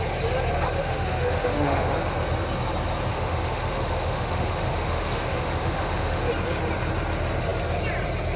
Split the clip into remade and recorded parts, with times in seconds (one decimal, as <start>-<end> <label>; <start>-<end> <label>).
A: 0.0-0.8 recorded; 0.8-1.9 remade; 1.9-3.1 recorded; 3.1-6.3 remade; 6.3-8.4 recorded